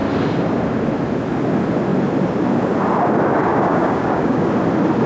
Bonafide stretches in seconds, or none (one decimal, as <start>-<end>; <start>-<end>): 0.0-3.5; 4.5-5.1